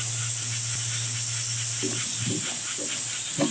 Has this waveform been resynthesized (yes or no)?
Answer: no